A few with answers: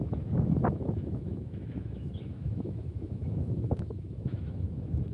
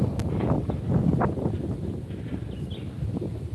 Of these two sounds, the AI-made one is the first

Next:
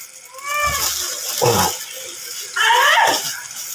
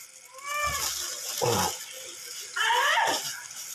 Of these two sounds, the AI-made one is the second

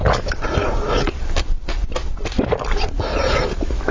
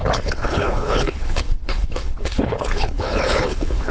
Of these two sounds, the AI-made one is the second